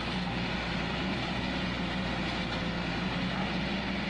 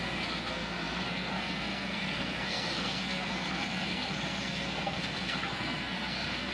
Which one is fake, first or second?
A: second